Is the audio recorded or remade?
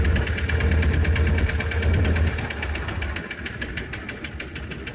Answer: recorded